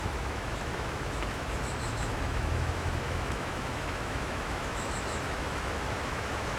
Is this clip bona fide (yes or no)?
no